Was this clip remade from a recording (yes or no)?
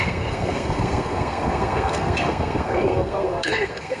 yes